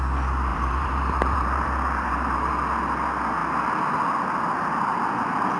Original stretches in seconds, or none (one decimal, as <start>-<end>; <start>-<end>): 0.0-0.5; 2.5-5.6